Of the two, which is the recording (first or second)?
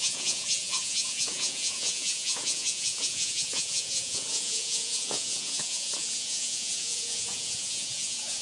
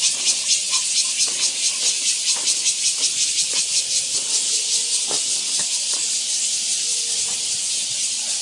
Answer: second